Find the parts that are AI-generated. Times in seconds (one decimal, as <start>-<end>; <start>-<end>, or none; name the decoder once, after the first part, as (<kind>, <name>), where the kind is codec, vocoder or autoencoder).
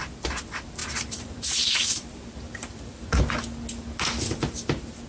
0.8-3.3 (vocoder, BigVGAN v2)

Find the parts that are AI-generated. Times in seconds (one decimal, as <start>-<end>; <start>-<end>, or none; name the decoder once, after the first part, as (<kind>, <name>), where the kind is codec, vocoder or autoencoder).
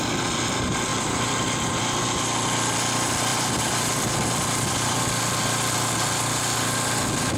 0.9-1.8 (vocoder, BigVGAN v2); 3.3-5.2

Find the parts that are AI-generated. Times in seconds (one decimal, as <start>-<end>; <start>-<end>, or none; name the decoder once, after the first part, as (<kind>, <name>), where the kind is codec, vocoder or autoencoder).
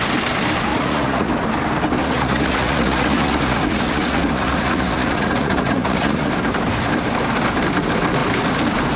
0.7-1.3 (vocoder, Vocos); 2.0-6.3